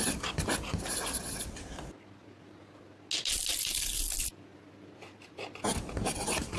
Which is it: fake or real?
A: real